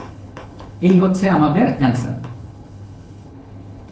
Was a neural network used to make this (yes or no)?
yes